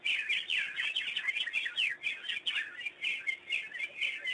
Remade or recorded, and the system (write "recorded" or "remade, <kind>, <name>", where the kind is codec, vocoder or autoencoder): recorded